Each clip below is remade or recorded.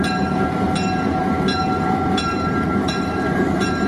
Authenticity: remade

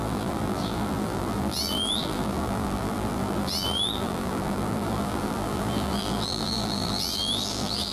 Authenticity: remade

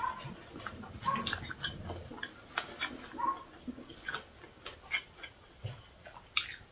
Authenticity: recorded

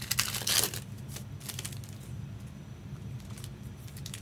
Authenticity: recorded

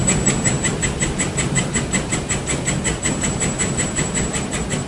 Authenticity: recorded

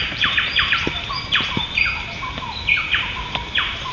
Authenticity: remade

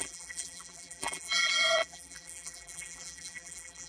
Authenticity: remade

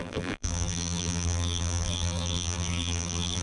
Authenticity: remade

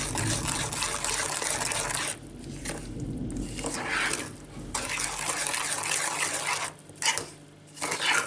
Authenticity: recorded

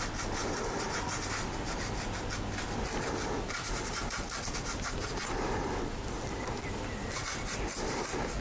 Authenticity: recorded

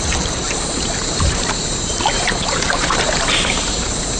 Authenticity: remade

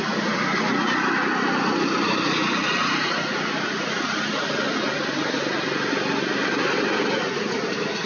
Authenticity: recorded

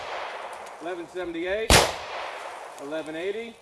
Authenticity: remade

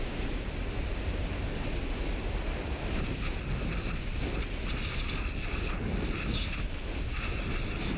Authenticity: recorded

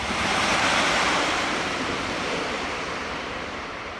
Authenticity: remade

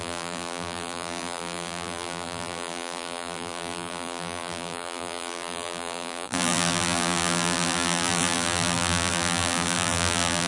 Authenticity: remade